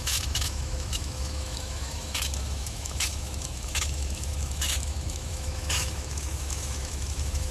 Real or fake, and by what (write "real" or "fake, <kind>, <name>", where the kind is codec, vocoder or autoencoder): fake, autoencoder, DAC-VAE